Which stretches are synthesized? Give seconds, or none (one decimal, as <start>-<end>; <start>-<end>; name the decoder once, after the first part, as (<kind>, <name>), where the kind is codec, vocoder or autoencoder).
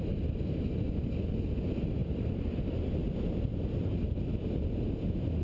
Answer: none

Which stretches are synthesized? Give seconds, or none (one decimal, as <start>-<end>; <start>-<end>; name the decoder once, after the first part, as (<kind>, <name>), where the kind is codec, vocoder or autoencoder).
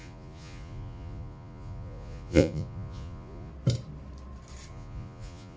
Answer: 0.0-3.5 (vocoder, Vocos); 4.7-5.6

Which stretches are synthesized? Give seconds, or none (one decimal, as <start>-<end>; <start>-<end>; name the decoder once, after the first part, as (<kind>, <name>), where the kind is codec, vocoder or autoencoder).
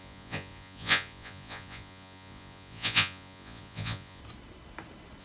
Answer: 0.0-4.2 (vocoder, Vocos)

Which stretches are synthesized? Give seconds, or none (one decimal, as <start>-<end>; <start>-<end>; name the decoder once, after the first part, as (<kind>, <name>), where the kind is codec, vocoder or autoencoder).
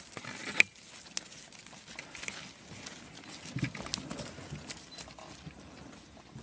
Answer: none